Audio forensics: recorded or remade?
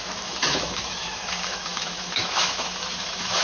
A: remade